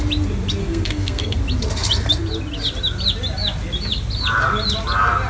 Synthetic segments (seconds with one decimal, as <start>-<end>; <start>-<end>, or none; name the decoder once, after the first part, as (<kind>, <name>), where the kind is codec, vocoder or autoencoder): 0.6-1.4 (codec, SNAC)